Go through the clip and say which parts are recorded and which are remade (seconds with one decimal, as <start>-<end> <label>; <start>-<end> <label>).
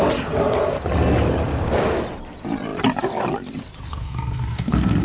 0.0-3.9 recorded; 3.9-5.0 remade